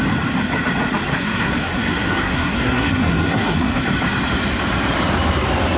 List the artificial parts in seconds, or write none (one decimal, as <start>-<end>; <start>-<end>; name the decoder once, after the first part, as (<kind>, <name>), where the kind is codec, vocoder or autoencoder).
1.1-3.8 (codec, SNAC)